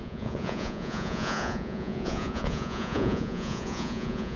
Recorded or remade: remade